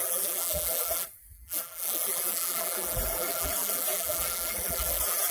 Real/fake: fake